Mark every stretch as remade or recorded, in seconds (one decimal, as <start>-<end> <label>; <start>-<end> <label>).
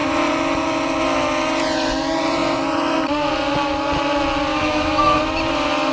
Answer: 0.0-4.5 recorded; 4.5-5.2 remade; 5.2-5.9 recorded